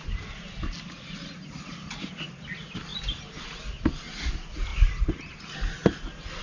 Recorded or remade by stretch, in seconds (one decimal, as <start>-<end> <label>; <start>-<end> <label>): 0.0-6.4 recorded